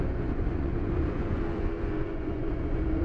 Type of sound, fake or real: fake